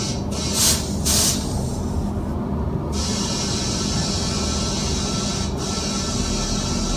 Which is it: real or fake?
real